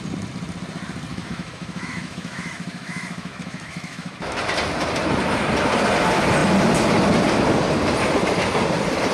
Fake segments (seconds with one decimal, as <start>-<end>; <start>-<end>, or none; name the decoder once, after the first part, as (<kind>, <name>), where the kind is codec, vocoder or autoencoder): 1.1-4.4 (autoencoder, DAC-VAE)